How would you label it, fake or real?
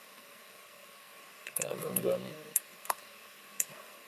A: fake